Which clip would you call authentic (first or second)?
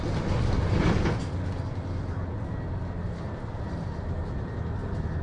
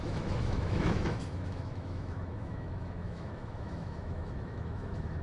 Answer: first